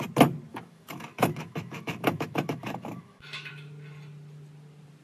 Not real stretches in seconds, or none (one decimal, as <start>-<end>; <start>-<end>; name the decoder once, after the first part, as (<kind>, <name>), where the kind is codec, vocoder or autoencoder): 0.5-3.5 (autoencoder, DAC-VAE)